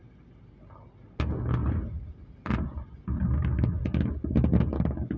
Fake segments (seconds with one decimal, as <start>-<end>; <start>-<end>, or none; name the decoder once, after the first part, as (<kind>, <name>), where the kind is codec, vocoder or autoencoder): 1.6-2.6 (vocoder, BigVGAN v2)